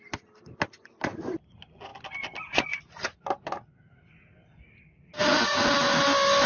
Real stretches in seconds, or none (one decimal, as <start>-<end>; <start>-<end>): 0.0-6.5